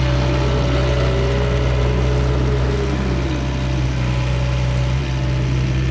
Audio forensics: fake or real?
real